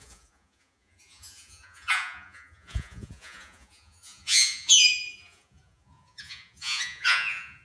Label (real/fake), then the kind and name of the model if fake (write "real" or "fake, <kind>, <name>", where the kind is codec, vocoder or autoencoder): fake, vocoder, Vocos